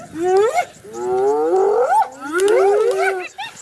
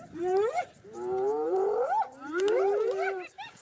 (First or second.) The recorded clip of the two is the first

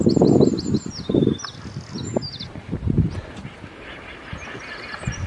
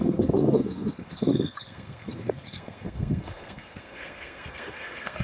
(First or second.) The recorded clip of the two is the first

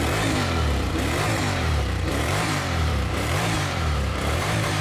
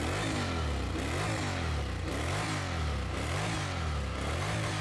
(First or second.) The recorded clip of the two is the second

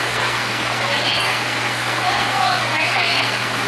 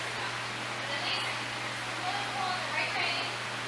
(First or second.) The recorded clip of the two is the second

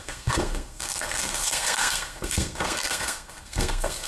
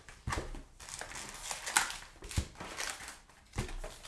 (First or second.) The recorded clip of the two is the second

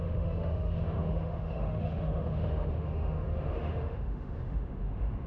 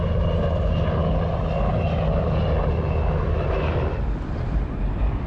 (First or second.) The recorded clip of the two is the second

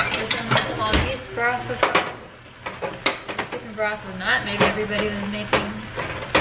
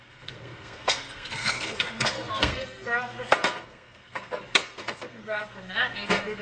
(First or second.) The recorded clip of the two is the first